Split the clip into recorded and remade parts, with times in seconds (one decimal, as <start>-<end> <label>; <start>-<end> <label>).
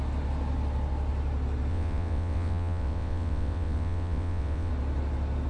0.0-1.7 recorded; 1.7-4.7 remade; 4.7-5.5 recorded